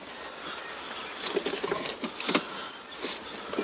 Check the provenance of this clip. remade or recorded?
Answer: recorded